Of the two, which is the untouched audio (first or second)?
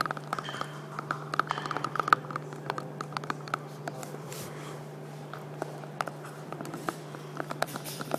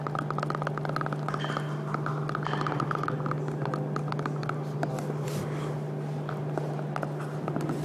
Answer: second